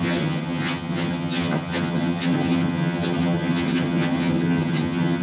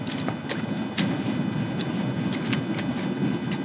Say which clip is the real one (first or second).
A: second